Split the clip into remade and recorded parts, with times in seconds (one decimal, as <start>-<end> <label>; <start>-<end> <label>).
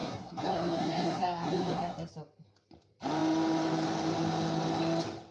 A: 0.0-2.1 remade; 2.1-5.3 recorded